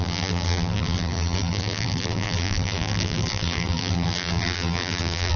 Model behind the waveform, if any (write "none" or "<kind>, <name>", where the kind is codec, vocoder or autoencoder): vocoder, BigVGAN v2